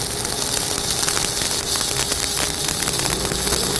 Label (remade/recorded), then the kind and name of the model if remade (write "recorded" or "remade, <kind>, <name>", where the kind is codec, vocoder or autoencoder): recorded